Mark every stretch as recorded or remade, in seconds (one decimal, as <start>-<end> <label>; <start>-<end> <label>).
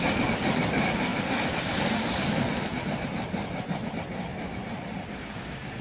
0.0-5.8 recorded